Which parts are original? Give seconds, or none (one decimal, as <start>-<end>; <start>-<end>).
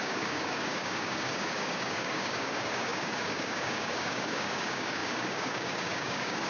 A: none